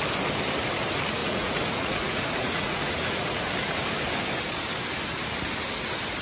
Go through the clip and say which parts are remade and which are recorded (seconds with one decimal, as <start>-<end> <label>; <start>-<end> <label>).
0.0-1.2 recorded; 1.2-3.4 remade; 3.4-6.2 recorded